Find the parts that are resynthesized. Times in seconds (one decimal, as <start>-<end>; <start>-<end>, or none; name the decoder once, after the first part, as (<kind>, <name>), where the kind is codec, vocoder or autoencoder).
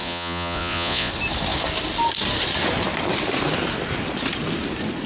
0.0-1.1 (vocoder, Vocos)